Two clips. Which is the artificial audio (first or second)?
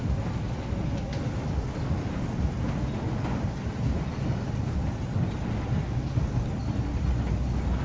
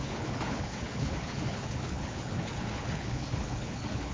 second